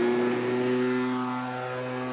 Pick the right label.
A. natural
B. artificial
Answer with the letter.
A